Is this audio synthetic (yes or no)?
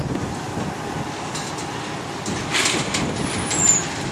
no